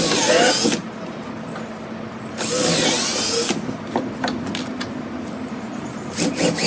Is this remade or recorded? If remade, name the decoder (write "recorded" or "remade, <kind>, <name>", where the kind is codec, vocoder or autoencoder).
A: recorded